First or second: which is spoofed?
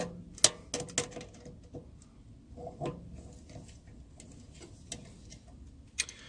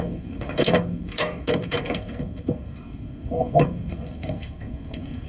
second